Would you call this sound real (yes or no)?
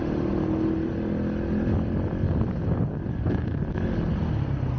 yes